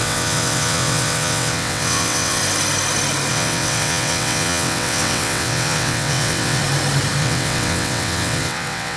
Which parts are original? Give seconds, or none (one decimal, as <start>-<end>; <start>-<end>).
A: 2.4-3.3; 6.6-7.2